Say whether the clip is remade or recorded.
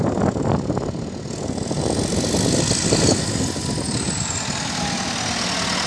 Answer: recorded